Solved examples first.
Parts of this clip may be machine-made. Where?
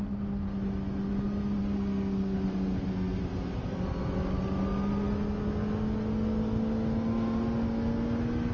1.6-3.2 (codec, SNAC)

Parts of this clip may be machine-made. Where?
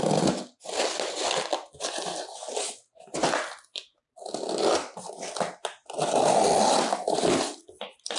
none